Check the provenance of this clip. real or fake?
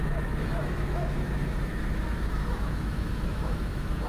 fake